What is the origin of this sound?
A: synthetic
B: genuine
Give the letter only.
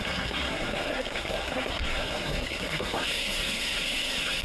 A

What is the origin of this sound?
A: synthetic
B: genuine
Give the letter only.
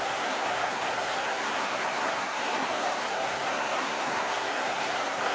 A